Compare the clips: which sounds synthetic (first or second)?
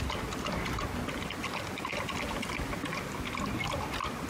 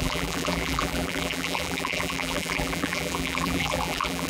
second